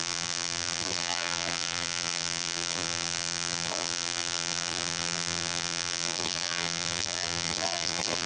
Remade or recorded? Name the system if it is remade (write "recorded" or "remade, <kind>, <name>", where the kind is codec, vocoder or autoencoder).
remade, vocoder, BigVGAN v2